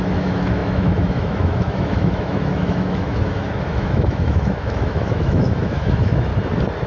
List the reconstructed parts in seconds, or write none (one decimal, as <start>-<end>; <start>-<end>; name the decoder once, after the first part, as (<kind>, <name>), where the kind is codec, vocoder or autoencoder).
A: 0.0-6.3 (autoencoder, DAC-VAE)